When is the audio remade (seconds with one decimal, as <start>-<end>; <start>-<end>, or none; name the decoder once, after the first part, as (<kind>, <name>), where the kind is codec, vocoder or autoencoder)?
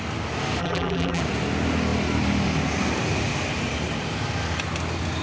0.6-1.2 (vocoder, BigVGAN v2)